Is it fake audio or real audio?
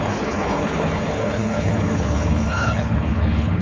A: fake